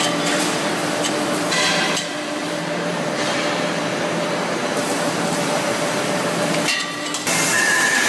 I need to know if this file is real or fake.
fake